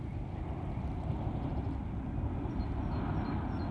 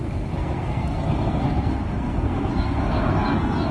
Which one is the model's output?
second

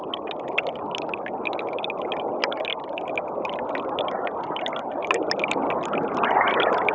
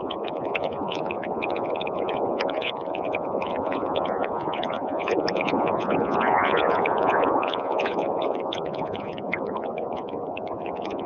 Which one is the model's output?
second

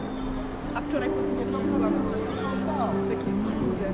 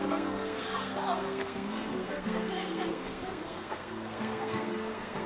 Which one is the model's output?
second